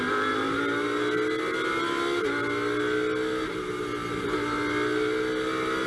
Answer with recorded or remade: recorded